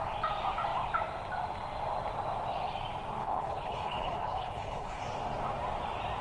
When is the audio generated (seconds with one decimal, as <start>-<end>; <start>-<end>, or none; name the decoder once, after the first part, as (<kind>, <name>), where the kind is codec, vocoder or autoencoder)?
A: 3.2-5.0 (codec, HILCodec)